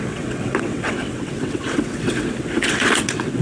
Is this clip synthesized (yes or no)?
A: yes